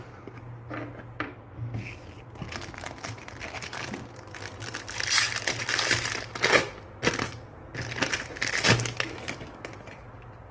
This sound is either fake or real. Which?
real